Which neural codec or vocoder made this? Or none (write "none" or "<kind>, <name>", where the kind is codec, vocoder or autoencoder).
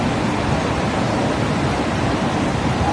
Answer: none